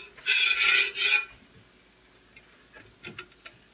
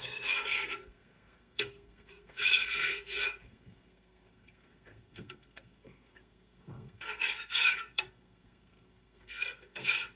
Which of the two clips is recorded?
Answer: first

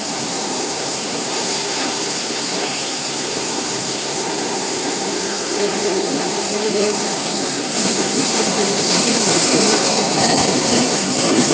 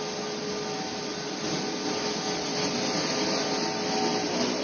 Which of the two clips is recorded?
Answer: second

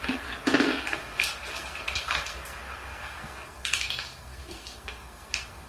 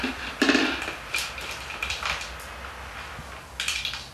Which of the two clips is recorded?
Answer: second